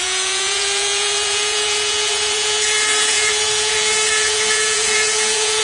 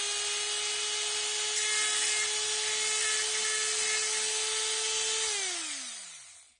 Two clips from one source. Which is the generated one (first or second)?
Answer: first